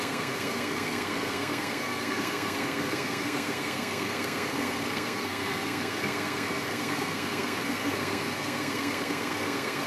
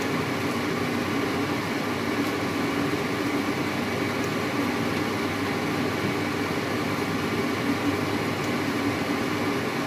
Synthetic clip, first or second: first